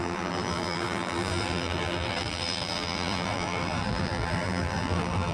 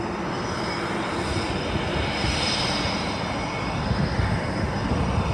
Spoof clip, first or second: first